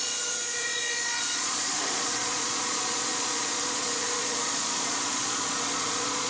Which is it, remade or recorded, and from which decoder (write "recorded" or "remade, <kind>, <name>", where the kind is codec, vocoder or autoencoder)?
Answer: remade, vocoder, Vocos